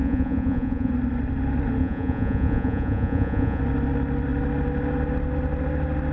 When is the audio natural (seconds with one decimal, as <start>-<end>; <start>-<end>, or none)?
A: 0.9-1.8; 3.6-6.1